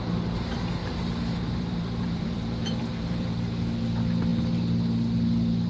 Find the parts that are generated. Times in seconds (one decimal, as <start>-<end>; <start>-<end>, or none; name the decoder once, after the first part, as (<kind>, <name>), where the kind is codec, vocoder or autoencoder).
0.8-3.3 (vocoder, BigVGAN v2)

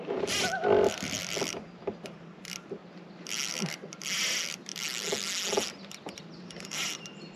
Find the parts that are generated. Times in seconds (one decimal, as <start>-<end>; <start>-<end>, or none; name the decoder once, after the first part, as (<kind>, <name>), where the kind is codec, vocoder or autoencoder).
none